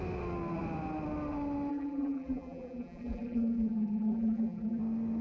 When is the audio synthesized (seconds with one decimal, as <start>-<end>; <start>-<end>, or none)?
1.7-4.8